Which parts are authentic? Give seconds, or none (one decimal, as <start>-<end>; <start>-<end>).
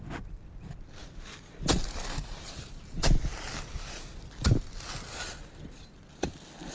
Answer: 0.0-6.7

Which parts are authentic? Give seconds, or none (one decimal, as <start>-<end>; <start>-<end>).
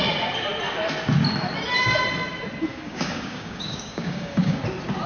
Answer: 0.0-2.7; 4.6-5.1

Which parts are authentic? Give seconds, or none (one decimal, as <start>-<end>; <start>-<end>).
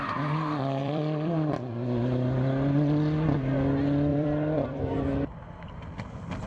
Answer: 0.0-0.8; 1.5-4.1; 4.8-6.5